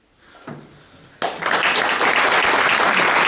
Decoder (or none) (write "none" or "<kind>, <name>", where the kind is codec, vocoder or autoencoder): none